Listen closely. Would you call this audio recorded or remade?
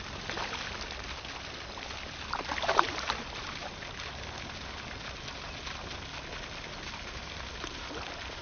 recorded